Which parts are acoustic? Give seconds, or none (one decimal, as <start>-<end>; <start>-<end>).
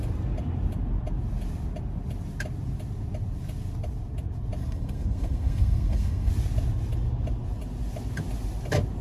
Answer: 0.0-4.6; 6.3-9.0